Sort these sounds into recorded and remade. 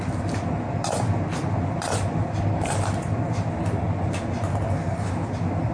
recorded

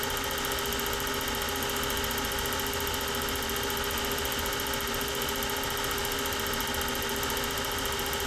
recorded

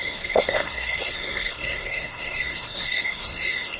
remade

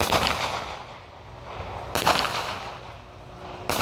recorded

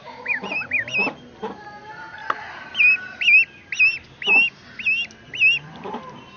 recorded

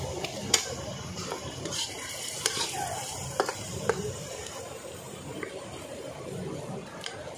remade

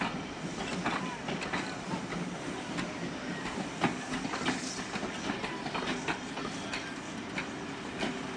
recorded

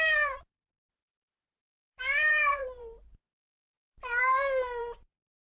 remade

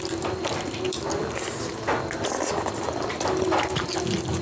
recorded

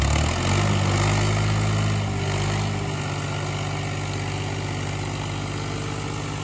recorded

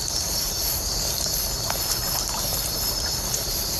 remade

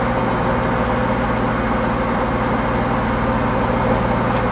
recorded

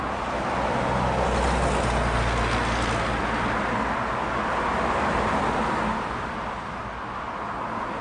recorded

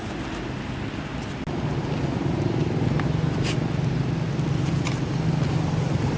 recorded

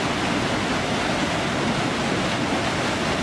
recorded